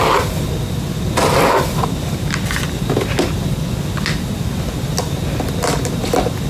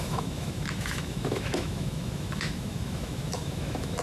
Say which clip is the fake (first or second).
second